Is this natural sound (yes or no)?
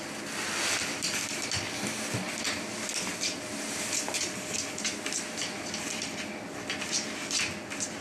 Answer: yes